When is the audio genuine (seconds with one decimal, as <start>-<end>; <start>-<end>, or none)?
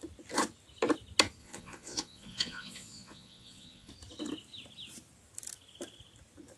0.0-1.4; 3.9-6.6